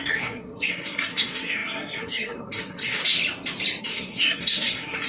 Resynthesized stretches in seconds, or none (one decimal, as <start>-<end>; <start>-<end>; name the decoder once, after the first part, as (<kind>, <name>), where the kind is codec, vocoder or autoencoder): 0.0-3.0 (codec, SNAC); 3.8-5.1